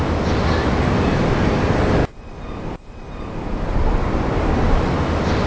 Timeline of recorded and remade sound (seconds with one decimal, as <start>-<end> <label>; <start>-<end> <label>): 0.0-5.5 recorded